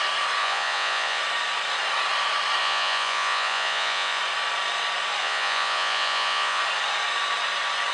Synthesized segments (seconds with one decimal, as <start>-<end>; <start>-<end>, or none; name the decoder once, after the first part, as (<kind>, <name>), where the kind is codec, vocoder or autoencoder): 0.4-1.2 (vocoder, Vocos); 2.6-4.2; 5.2-6.6